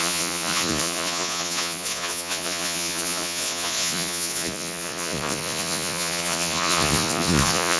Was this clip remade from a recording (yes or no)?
yes